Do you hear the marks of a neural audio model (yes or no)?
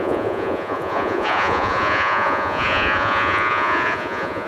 yes